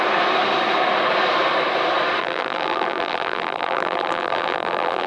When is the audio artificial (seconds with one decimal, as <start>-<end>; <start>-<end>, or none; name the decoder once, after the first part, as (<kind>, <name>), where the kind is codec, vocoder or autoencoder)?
2.2-5.1 (vocoder, BigVGAN v2)